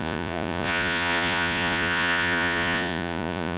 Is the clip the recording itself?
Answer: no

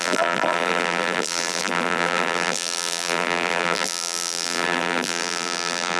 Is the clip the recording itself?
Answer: no